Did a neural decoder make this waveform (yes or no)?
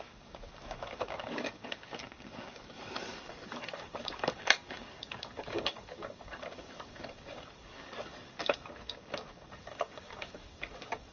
yes